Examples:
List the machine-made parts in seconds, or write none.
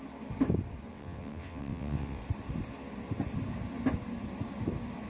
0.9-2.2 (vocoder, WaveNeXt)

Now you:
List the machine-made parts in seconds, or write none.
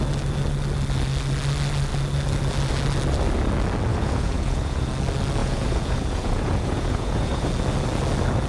3.9-4.9 (vocoder, Vocos); 5.4-7.5